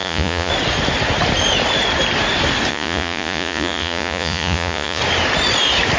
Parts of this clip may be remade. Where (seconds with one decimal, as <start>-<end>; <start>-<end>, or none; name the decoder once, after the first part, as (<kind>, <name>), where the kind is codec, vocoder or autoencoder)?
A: 0.0-0.5 (vocoder, Vocos); 2.7-5.0